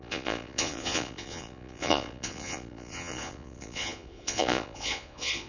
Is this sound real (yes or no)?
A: no